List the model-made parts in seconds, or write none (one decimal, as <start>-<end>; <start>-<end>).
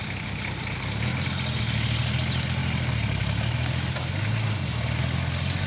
none